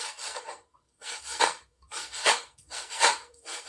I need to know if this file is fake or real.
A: fake